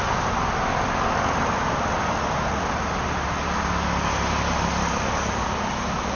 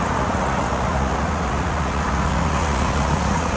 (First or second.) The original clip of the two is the first